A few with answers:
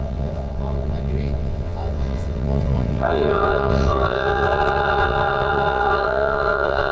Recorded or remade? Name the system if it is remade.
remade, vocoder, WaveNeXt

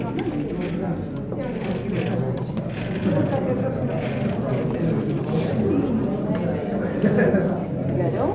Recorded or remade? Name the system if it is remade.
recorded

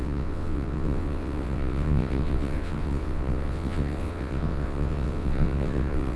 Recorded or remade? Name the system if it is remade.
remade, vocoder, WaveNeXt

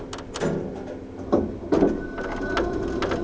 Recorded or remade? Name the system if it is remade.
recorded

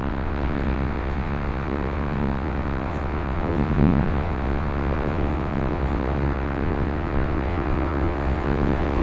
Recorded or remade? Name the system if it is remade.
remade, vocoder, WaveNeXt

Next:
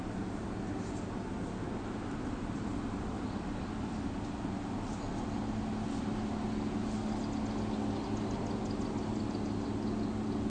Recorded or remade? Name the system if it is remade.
recorded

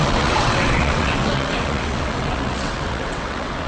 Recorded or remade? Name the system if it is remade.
remade, vocoder, WaveNeXt